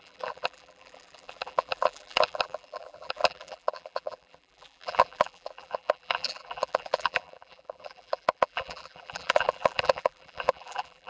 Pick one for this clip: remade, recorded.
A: remade